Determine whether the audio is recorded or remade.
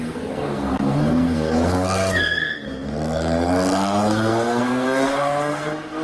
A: remade